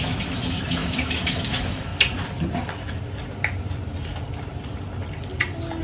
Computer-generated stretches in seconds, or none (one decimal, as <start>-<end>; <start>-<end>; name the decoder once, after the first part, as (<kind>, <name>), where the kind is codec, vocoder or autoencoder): 0.0-1.9 (autoencoder, DAC-VAE)